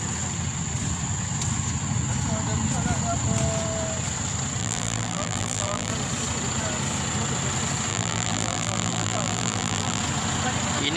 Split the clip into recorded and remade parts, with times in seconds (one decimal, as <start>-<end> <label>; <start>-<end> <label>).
0.0-4.6 recorded; 4.6-5.9 remade; 5.9-7.9 recorded; 7.9-10.0 remade; 10.0-11.0 recorded